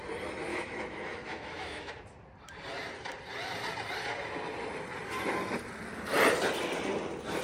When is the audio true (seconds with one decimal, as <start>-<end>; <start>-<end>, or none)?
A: 0.0-0.5; 1.9-7.4